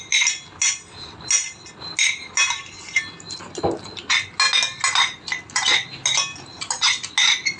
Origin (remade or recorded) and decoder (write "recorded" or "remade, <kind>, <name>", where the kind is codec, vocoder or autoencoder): recorded